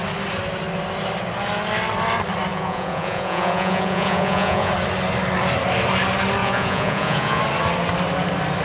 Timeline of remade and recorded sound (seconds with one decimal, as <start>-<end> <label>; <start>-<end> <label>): 0.0-2.5 recorded; 2.5-4.7 remade; 4.7-6.4 recorded; 6.4-7.4 remade; 7.4-8.6 recorded